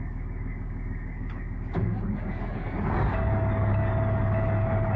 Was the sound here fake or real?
fake